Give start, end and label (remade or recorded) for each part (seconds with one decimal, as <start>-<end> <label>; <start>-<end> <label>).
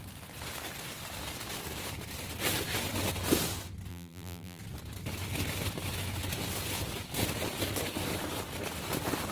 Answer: 0.0-3.9 recorded; 3.9-4.6 remade; 4.6-9.3 recorded